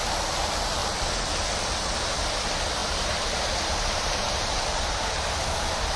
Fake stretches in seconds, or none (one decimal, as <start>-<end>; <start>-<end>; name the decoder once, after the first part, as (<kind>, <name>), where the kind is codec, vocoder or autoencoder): 2.8-5.3 (vocoder, BigVGAN v2)